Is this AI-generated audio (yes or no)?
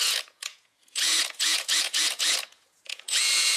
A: yes